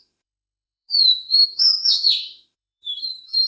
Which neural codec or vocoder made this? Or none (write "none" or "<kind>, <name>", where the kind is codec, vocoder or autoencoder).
autoencoder, DAC-VAE